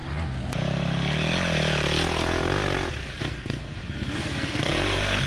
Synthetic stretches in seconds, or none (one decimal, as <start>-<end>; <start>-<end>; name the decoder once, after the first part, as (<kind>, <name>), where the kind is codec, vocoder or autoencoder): 3.2-5.3 (codec, SNAC)